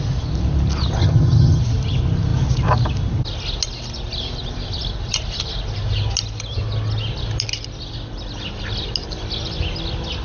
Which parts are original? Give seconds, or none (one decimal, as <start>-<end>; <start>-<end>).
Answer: 0.0-1.0; 1.6-10.2